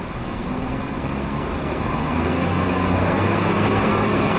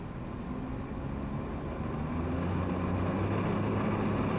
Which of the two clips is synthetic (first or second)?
first